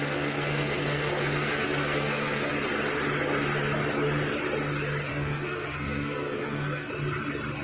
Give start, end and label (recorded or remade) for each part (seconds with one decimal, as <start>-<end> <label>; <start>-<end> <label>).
0.0-2.5 remade; 2.5-5.1 recorded; 5.1-6.9 remade; 6.9-7.6 recorded